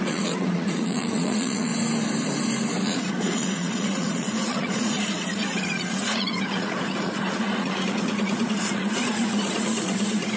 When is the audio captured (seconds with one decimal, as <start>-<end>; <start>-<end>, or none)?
1.7-2.8